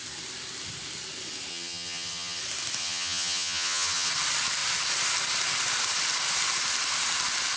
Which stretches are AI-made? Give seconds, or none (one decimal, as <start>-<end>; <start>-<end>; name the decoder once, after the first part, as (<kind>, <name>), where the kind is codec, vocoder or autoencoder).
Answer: 1.5-2.4 (vocoder, HiFi-GAN); 2.8-4.1